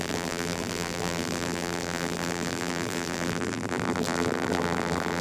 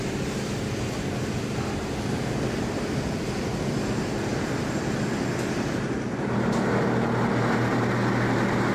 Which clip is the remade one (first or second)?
first